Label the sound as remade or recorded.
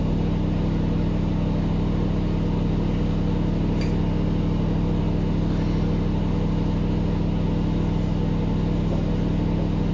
recorded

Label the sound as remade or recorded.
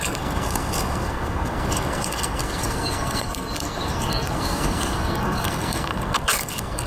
remade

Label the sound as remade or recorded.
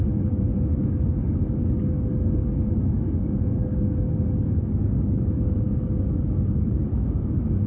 remade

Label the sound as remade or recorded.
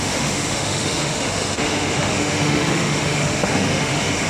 remade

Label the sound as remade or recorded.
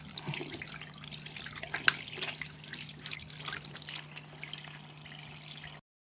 recorded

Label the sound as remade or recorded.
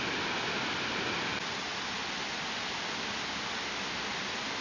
recorded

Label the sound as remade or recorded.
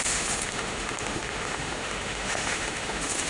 remade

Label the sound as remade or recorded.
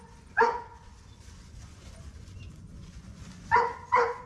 remade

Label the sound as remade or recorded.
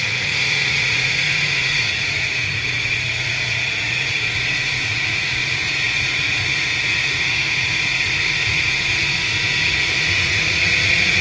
remade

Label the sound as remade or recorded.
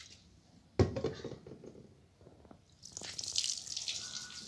recorded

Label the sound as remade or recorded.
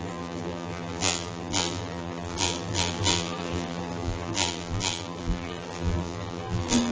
remade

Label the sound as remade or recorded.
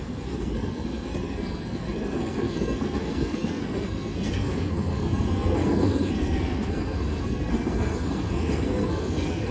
remade